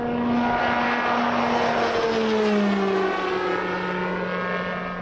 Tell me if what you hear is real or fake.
real